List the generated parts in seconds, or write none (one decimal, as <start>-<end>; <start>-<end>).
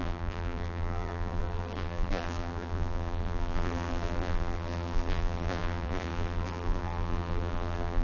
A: 0.0-8.0